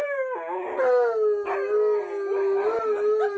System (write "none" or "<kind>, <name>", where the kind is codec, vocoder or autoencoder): none